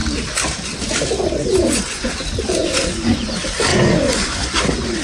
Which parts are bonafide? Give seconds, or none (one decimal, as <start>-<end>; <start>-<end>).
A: 0.0-1.4; 2.1-2.6; 3.3-3.7; 4.5-5.0